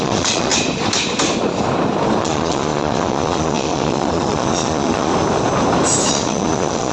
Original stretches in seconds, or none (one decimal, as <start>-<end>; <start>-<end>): 0.5-2.2; 5.1-6.1